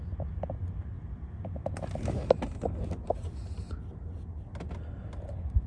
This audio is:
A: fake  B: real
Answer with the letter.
B